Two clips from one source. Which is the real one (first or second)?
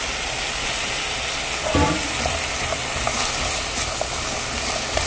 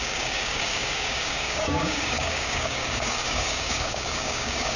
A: first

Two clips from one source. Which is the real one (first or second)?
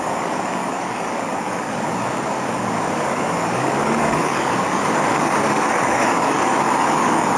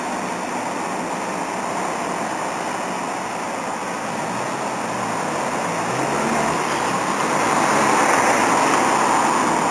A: second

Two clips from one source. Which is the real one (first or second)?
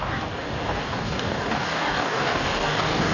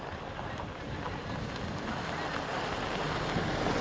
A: second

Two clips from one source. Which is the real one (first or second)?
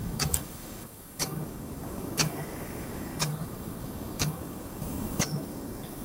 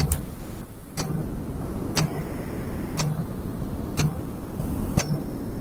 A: second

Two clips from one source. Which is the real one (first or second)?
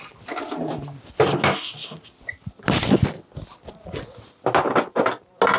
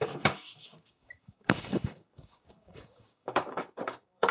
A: first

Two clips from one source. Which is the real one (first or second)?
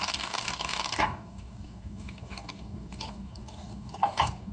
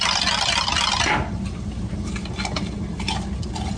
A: second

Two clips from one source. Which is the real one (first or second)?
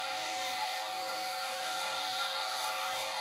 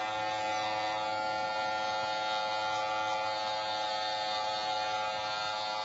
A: second